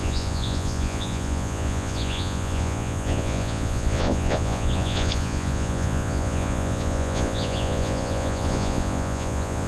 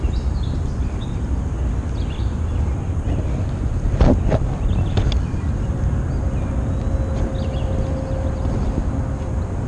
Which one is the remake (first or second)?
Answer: first